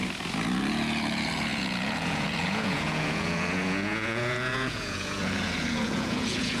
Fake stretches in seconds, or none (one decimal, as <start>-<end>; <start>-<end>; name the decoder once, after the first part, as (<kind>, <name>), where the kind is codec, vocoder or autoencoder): 0.7-6.6 (vocoder, Vocos)